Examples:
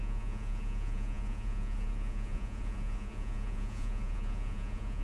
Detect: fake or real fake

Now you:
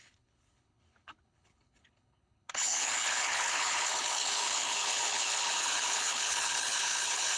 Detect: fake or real fake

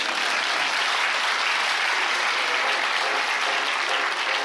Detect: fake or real real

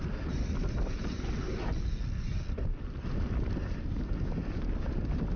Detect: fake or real real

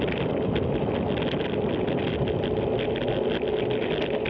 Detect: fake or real real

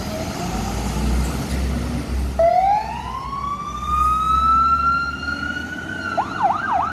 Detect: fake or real real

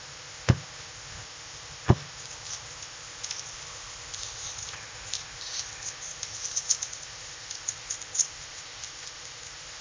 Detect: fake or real fake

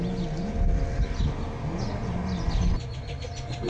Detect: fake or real real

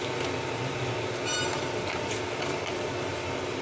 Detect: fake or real real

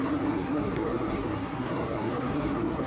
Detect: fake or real fake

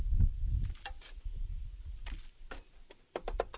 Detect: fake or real real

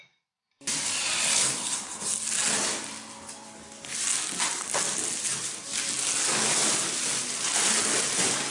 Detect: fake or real real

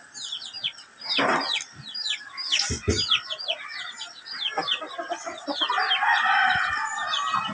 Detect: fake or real real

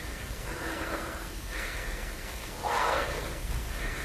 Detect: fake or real fake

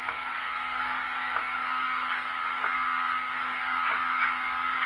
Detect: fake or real fake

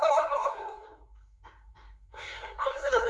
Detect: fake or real fake